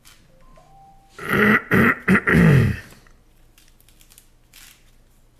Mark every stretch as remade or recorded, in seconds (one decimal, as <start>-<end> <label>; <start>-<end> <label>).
0.0-2.3 recorded; 2.3-2.8 remade; 2.8-5.4 recorded